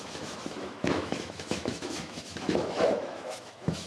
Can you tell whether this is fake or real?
fake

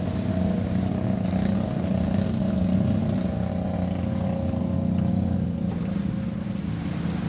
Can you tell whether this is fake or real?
real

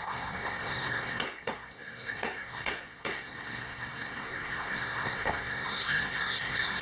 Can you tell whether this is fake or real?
fake